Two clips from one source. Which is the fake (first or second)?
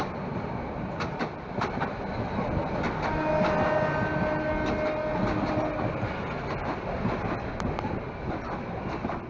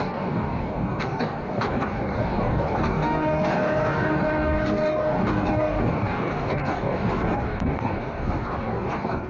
second